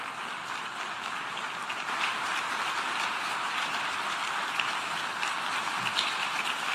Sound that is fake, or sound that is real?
real